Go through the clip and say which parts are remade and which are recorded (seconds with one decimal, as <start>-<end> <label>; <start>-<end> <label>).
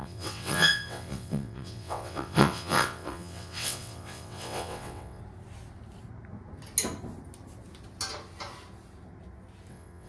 0.0-5.2 remade; 5.2-9.7 recorded; 9.7-10.1 remade